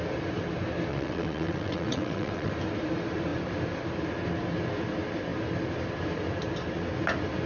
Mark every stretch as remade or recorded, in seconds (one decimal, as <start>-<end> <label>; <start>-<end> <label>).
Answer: 0.0-0.9 recorded; 0.9-2.5 remade; 2.5-7.5 recorded